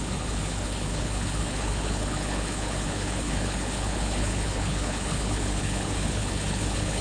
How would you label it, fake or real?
fake